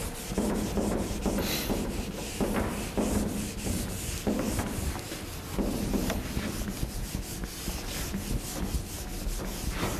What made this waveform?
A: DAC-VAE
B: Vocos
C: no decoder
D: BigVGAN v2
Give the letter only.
C